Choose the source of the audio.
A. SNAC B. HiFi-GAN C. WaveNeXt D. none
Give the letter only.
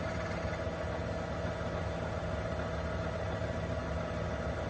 D